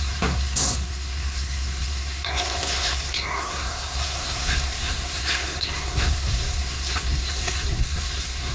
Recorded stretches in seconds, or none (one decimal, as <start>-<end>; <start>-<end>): none